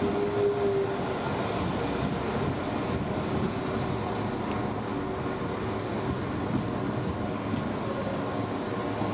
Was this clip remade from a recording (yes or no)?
no